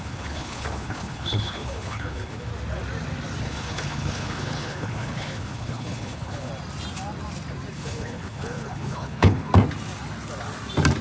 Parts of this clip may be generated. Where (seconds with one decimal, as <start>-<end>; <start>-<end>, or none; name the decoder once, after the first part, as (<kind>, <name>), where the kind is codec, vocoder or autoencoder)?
0.0-2.5 (codec, HILCodec); 3.4-6.5; 7.7-9.5